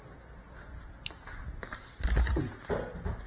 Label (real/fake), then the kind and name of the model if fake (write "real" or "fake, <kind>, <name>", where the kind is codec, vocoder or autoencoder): real